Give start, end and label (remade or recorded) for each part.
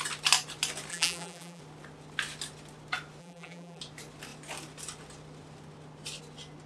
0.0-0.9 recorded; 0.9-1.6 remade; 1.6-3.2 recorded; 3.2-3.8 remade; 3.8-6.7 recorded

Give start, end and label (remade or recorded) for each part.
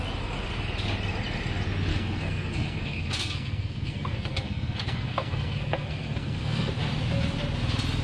0.0-1.9 recorded; 1.9-6.7 remade; 6.7-8.0 recorded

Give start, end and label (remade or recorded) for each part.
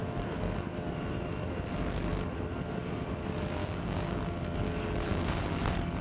0.0-3.6 recorded; 3.6-4.2 remade; 4.2-5.1 recorded; 5.1-5.6 remade; 5.6-6.0 recorded